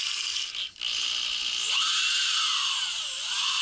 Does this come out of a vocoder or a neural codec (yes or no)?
no